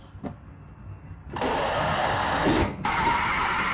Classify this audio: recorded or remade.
recorded